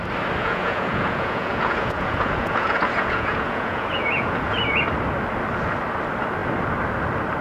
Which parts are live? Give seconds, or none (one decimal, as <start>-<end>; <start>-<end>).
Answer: 0.0-0.4; 4.8-7.4